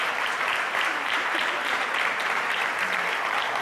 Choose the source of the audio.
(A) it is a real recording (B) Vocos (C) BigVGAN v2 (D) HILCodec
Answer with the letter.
C